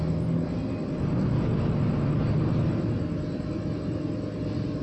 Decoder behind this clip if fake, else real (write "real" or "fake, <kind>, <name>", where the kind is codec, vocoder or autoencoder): real